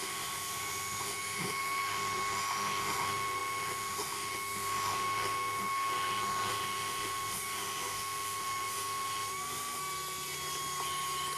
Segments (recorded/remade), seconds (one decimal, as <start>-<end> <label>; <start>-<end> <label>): 0.0-9.8 remade; 9.8-11.4 recorded